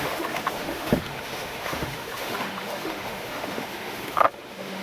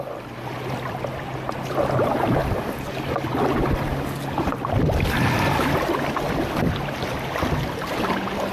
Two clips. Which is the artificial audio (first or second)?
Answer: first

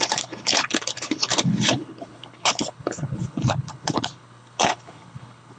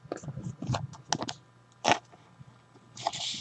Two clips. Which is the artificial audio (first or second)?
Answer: first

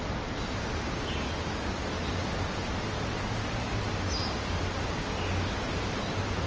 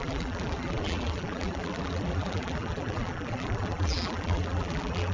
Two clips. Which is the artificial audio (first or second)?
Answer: second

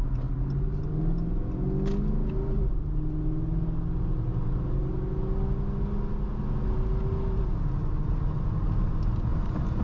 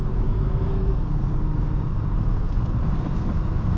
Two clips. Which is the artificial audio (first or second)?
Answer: second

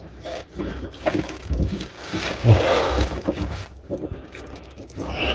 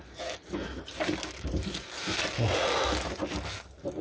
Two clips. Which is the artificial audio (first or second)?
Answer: first